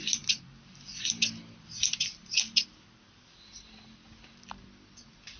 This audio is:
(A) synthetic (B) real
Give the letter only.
B